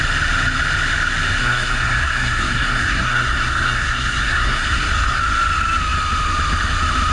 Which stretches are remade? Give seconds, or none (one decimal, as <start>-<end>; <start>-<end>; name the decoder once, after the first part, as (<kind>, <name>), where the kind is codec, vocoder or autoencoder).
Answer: 1.4-5.2 (codec, SNAC)